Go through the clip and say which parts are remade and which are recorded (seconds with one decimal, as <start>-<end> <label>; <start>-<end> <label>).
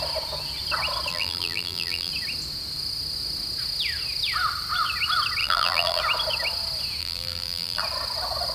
0.0-1.1 recorded; 1.1-2.1 remade; 2.1-5.4 recorded; 5.4-6.0 remade; 6.0-7.0 recorded; 7.0-7.8 remade; 7.8-8.5 recorded